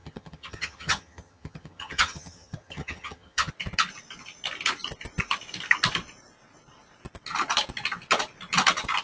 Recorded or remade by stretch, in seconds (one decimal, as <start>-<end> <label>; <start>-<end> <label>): 0.0-3.5 remade; 3.5-9.0 recorded